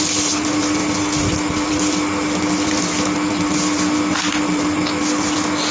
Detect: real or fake real